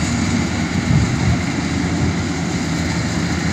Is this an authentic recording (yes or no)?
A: yes